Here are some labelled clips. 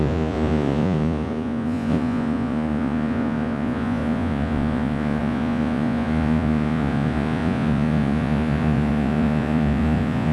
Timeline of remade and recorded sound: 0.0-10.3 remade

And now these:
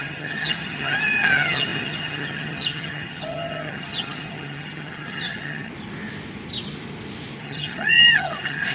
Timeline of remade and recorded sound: 0.0-5.7 remade; 5.7-7.4 recorded; 7.4-8.7 remade

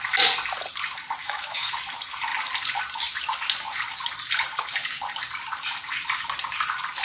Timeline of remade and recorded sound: 0.0-1.2 recorded; 1.2-1.7 remade; 1.7-7.0 recorded

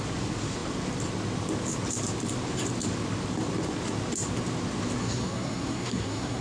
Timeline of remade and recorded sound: 0.0-5.0 recorded; 5.0-6.4 remade

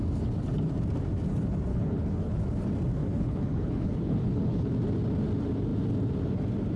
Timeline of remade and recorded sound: 0.0-1.7 recorded; 1.7-2.4 remade; 2.4-3.0 recorded; 3.0-4.7 remade; 4.7-6.8 recorded

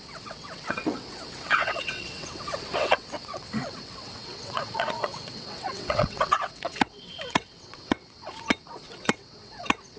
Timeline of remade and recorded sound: 0.0-10.0 remade

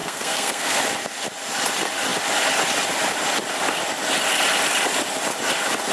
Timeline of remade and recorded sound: 0.0-0.8 remade; 0.8-5.9 recorded

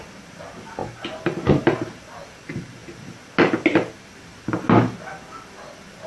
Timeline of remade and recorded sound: 0.0-6.1 recorded